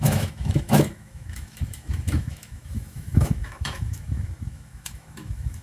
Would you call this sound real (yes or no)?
no